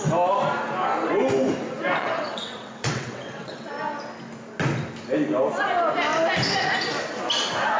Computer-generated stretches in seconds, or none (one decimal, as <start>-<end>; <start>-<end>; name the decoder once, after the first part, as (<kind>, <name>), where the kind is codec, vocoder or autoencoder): 2.0-3.7 (vocoder, WaveNeXt)